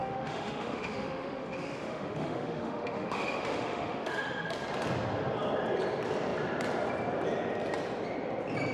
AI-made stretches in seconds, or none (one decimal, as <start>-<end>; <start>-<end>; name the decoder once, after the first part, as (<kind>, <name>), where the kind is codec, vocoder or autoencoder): 0.0-4.5 (autoencoder, DAC-VAE)